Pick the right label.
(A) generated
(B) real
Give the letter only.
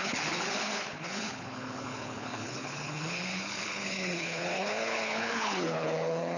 A